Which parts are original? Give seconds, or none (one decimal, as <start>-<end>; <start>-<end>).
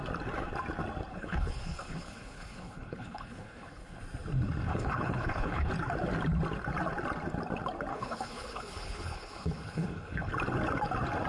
0.0-1.1; 4.0-4.7; 5.7-7.9; 10.3-11.3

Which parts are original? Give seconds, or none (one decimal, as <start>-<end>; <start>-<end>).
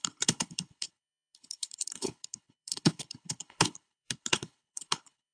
none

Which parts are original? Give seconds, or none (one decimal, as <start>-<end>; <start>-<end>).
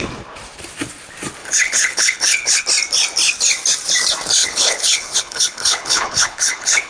0.0-1.4; 2.6-4.4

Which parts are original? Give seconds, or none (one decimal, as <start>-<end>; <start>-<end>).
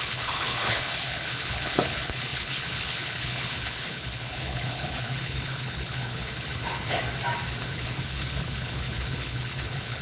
7.0-7.6